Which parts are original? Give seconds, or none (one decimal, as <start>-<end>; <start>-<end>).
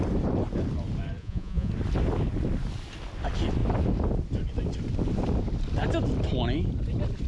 0.0-1.2; 1.7-7.3